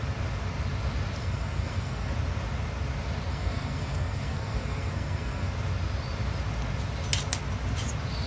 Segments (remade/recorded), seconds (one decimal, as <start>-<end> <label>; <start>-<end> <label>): 0.0-1.2 recorded; 1.2-2.1 remade; 2.1-3.3 recorded; 3.3-5.5 remade; 5.5-8.3 recorded